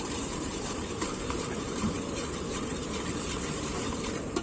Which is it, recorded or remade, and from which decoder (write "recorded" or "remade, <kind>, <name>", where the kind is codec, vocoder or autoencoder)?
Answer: remade, vocoder, BigVGAN v2